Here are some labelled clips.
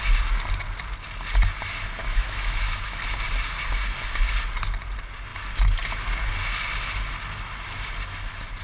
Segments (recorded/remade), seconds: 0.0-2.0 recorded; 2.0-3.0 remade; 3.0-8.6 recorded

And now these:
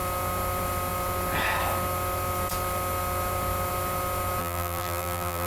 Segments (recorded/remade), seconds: 0.0-4.4 recorded; 4.4-5.5 remade

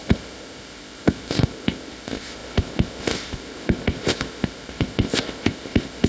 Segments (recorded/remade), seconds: 0.0-6.1 remade